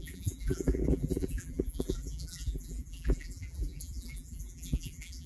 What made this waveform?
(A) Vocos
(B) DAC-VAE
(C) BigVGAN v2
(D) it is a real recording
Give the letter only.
C